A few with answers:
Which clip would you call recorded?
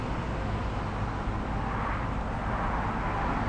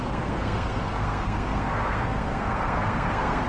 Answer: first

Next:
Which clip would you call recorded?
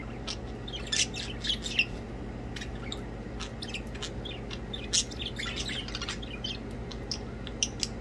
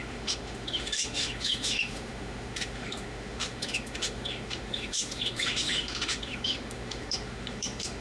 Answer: first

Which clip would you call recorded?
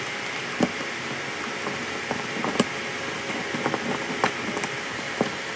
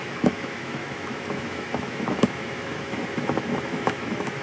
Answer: first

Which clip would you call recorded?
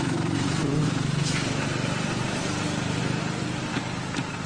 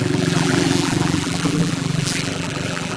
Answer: first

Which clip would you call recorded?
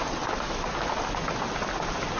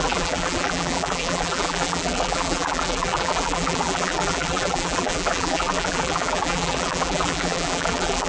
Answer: first